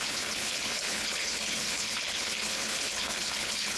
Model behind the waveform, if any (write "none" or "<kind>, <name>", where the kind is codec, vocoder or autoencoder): codec, HILCodec